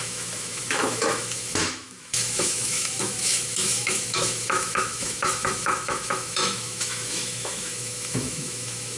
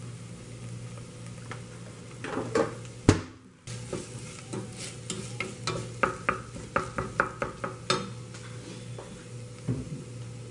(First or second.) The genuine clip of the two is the second